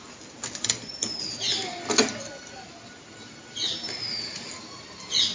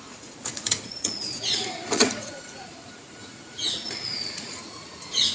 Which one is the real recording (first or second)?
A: first